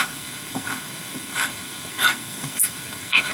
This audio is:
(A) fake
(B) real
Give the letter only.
A